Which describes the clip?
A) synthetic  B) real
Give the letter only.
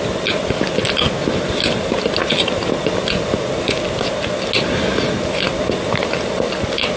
B